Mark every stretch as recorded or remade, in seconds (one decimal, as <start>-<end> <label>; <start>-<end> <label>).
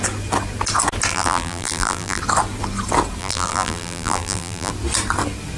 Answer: 0.0-1.1 recorded; 1.1-2.2 remade; 2.2-3.2 recorded; 3.2-4.7 remade; 4.7-5.6 recorded